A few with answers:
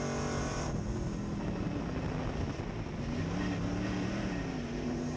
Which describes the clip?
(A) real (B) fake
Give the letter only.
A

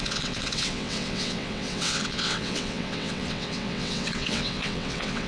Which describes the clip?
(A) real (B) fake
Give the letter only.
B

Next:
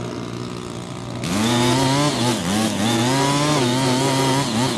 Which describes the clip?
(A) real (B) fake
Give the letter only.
A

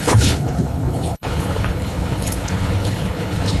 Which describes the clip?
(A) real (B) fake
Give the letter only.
B